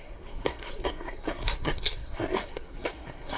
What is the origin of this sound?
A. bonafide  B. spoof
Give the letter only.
B